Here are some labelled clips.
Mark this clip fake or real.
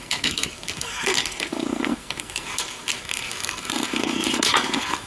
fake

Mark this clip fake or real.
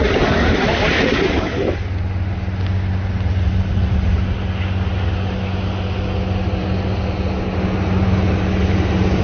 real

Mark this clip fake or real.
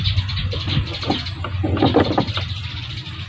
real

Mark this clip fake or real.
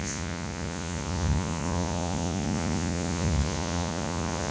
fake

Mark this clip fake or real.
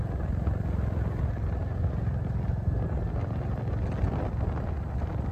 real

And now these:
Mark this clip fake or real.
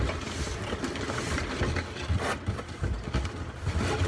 real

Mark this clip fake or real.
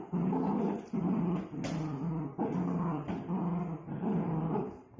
real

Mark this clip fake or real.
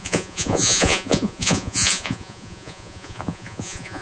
fake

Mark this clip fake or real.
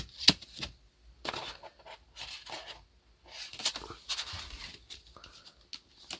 real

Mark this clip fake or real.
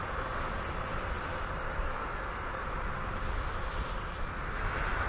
real